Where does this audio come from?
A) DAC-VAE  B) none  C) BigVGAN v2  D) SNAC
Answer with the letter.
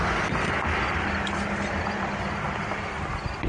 B